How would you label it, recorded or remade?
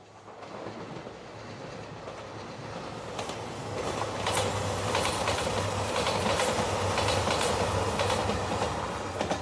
recorded